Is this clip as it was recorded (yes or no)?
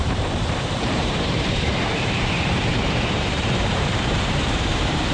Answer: no